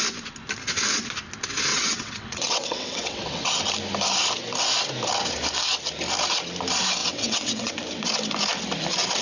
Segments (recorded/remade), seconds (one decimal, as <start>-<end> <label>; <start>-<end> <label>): 0.0-1.7 recorded; 1.7-3.5 remade; 3.5-7.0 recorded; 7.0-7.7 remade; 7.7-9.2 recorded

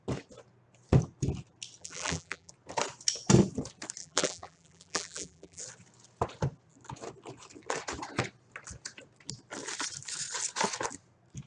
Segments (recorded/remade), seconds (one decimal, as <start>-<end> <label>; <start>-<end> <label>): 0.0-1.8 recorded; 1.8-2.5 remade; 2.5-4.0 recorded; 4.0-5.6 remade; 5.6-11.5 recorded

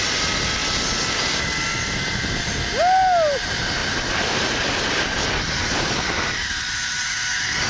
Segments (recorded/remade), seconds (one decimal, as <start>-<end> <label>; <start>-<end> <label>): 0.0-7.7 recorded

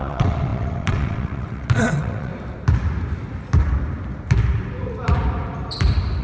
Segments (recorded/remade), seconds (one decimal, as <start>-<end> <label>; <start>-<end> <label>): 0.0-2.3 remade; 2.3-6.2 recorded

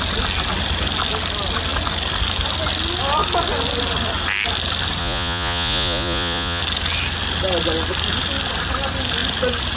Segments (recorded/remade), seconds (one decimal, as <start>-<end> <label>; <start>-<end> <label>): 0.0-5.0 recorded; 5.0-6.6 remade; 6.6-9.8 recorded

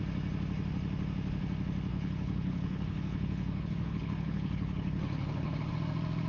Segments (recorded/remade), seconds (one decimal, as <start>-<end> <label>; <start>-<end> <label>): 0.0-1.9 recorded; 1.9-5.7 remade; 5.7-6.3 recorded